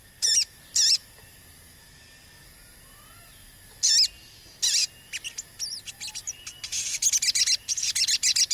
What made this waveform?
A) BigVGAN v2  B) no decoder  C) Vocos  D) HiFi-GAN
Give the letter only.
B